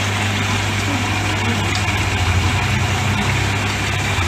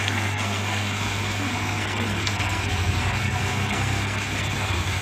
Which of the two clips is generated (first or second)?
second